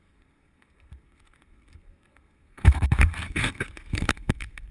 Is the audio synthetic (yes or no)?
yes